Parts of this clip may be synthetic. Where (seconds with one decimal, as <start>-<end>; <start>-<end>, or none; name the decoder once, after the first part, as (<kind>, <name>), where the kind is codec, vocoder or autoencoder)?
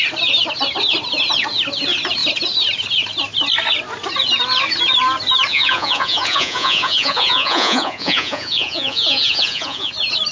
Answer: 5.5-9.9 (vocoder, Vocos)